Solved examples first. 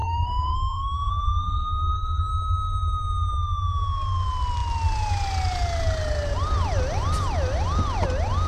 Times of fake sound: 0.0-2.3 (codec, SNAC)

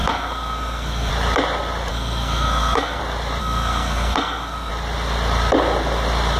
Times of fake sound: 0.0-1.1 (codec, SNAC); 1.9-3.0; 3.4-4.7